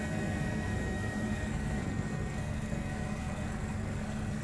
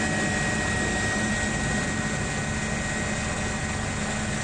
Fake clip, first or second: first